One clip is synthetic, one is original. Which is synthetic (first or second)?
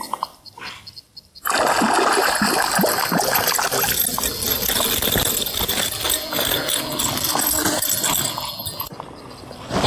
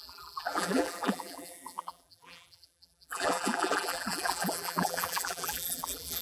second